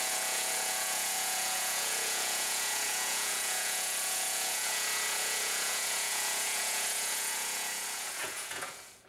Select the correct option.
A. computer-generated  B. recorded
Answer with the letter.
A